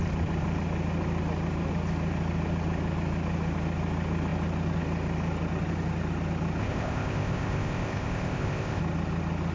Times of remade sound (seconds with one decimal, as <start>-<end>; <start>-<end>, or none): 6.6-8.8